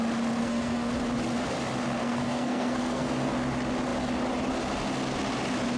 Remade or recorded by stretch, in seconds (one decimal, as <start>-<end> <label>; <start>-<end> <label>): 0.0-0.4 recorded; 0.4-0.9 remade; 0.9-2.0 recorded; 2.0-3.3 remade; 3.3-5.8 recorded